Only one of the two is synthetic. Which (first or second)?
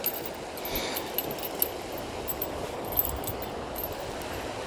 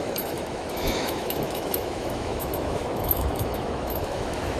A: second